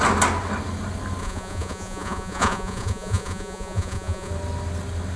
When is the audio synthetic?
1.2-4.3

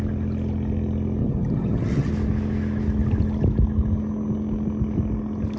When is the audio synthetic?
1.2-2.1

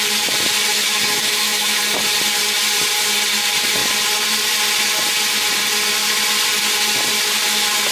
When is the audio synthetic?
0.7-1.8

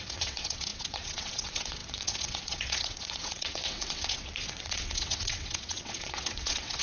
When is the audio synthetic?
0.0-6.8